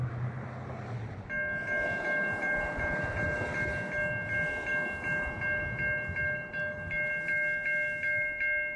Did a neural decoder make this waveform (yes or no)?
no